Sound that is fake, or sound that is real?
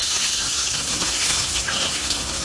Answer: fake